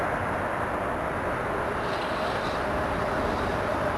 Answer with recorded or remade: recorded